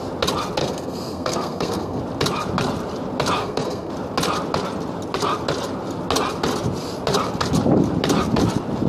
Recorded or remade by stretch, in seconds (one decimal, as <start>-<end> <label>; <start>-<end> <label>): 0.0-0.6 recorded; 0.6-2.0 remade; 2.0-3.4 recorded; 3.4-3.9 remade; 3.9-8.9 recorded

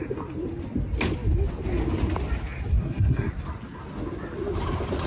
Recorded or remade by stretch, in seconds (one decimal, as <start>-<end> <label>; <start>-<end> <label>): 0.0-2.7 recorded; 2.7-3.3 remade; 3.3-5.1 recorded